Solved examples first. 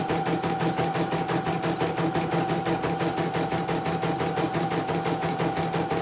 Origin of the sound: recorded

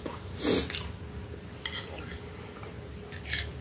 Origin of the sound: recorded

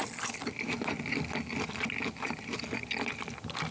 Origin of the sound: recorded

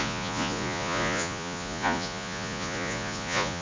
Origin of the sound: remade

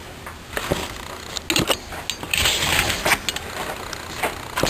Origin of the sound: recorded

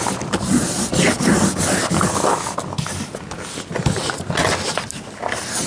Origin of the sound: recorded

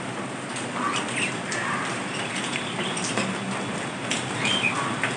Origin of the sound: recorded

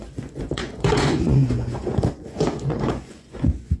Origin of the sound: remade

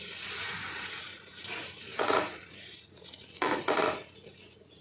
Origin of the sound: remade